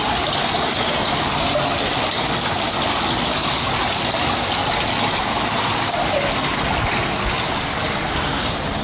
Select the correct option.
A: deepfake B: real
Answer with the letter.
B